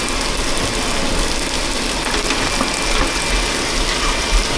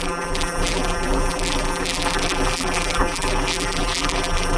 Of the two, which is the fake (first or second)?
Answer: second